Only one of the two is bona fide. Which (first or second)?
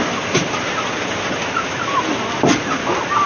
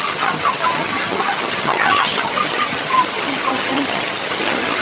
first